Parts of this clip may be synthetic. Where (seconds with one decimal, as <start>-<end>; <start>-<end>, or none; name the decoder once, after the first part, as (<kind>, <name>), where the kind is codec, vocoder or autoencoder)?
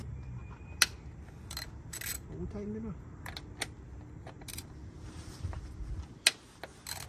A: 0.0-0.4 (vocoder, BigVGAN v2); 4.4-5.8